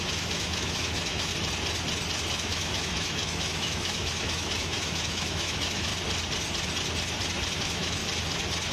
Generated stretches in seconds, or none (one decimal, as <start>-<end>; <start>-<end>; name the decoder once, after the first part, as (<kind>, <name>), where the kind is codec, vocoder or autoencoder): 0.0-1.3 (autoencoder, DAC-VAE); 2.3-5.9; 7.6-8.0